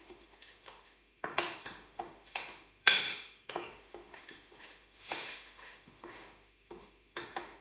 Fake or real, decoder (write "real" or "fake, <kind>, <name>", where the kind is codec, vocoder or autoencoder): fake, autoencoder, DAC-VAE